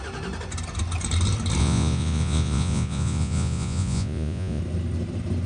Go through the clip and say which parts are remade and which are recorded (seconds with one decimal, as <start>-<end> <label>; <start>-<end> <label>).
0.0-1.6 recorded; 1.6-4.6 remade; 4.6-5.5 recorded